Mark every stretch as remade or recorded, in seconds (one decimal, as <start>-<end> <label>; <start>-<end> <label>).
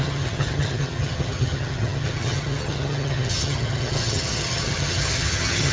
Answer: 0.0-5.7 remade